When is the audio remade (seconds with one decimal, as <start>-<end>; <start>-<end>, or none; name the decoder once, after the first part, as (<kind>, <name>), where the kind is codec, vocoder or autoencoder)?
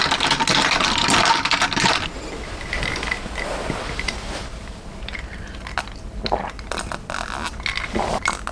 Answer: none